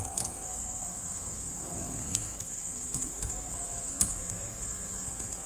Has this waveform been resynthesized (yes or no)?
yes